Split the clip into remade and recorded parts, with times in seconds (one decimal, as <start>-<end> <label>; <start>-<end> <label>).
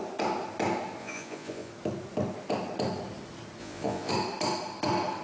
0.0-1.0 recorded; 1.0-1.7 remade; 1.7-3.6 recorded; 3.6-4.1 remade; 4.1-5.2 recorded